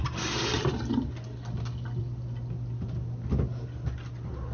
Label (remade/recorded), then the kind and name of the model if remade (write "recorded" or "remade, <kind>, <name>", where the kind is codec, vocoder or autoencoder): recorded